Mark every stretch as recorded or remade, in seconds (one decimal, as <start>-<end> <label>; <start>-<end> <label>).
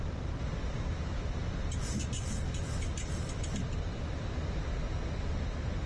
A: 0.0-5.9 recorded